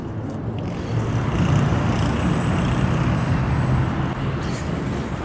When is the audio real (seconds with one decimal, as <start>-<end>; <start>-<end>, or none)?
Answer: 0.0-5.2